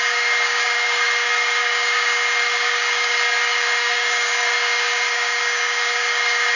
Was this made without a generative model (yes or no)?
no